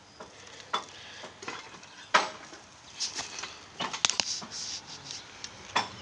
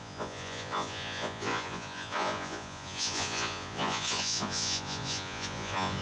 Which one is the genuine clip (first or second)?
first